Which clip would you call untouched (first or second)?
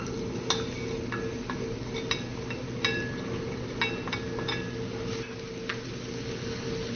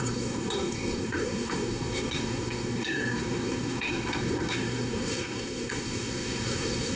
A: first